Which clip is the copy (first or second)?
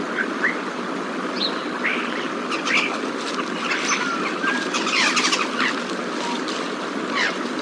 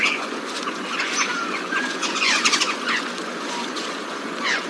second